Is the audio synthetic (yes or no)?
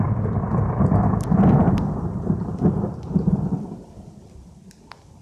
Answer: no